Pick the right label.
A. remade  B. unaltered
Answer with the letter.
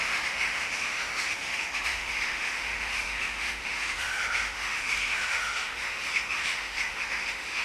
A